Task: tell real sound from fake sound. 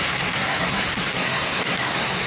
fake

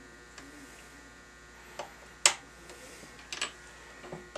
real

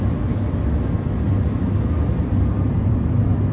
real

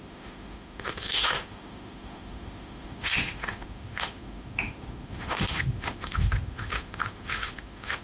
fake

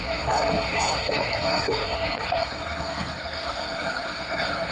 fake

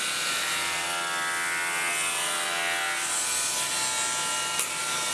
real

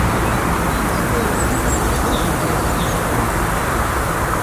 real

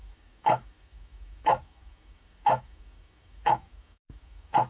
fake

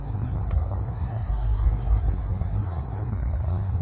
fake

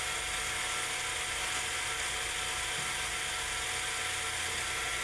real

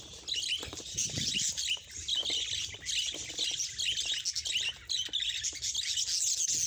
real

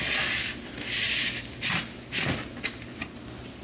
real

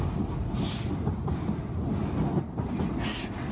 real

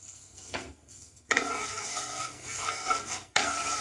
fake